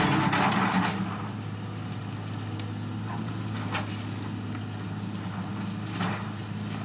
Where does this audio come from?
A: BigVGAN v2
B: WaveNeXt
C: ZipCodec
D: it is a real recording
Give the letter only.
D